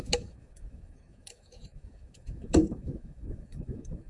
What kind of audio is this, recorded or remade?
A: remade